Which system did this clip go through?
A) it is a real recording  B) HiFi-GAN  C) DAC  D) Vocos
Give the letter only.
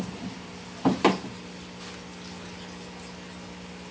A